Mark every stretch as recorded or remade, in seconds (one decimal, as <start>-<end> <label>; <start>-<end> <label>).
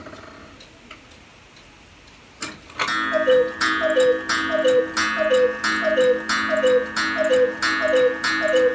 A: 0.0-8.7 recorded